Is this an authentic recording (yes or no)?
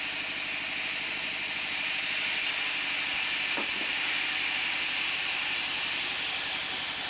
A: yes